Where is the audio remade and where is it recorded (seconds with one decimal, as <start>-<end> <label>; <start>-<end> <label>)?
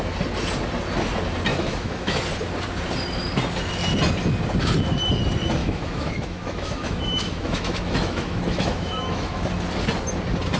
0.0-1.5 recorded; 1.5-2.2 remade; 2.2-5.6 recorded; 5.6-9.5 remade; 9.5-10.6 recorded